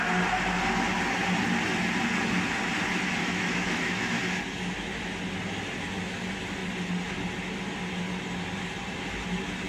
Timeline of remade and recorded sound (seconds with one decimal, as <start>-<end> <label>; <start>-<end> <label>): 0.0-3.2 recorded; 3.2-4.2 remade; 4.2-9.7 recorded